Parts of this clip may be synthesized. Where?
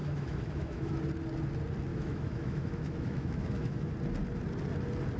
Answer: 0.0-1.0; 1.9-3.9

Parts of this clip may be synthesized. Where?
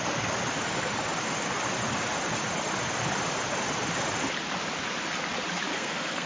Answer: 5.7-6.3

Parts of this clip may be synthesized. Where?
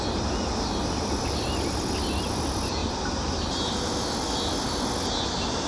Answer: none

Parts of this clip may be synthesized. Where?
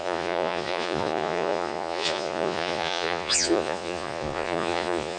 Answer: 0.0-5.2